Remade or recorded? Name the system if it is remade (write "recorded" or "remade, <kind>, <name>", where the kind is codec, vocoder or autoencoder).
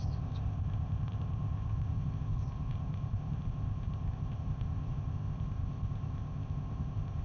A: remade, codec, ZipCodec